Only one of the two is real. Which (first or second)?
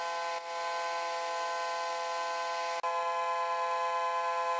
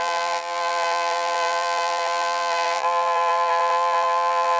first